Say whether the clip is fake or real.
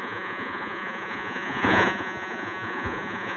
fake